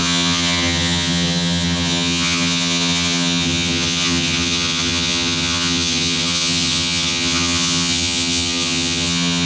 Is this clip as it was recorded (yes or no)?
no